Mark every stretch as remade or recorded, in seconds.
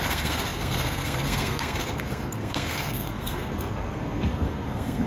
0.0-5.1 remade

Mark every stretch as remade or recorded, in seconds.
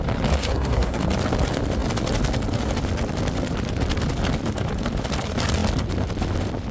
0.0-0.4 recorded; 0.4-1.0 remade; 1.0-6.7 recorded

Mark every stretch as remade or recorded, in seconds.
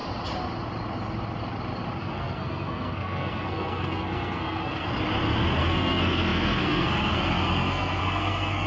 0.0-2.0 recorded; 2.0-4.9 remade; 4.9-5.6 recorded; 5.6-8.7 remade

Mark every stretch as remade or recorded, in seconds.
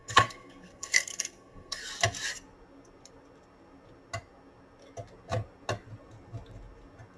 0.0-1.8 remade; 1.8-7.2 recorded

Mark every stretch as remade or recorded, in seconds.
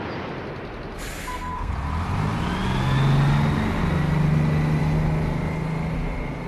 0.0-1.2 recorded; 1.2-1.7 remade; 1.7-6.5 recorded